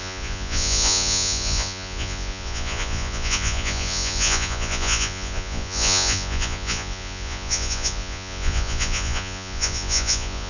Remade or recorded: remade